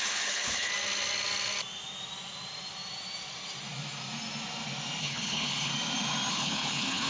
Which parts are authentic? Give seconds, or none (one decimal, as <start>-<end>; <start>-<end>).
0.7-5.0; 5.7-6.3